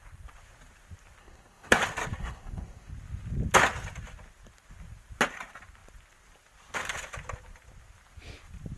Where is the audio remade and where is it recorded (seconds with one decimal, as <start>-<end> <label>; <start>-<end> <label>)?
0.0-1.2 recorded; 1.2-1.8 remade; 1.8-2.2 recorded; 2.2-2.9 remade; 2.9-8.8 recorded